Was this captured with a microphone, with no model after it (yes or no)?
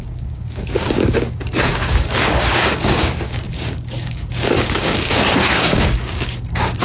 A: no